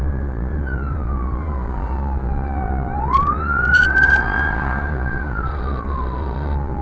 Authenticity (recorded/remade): remade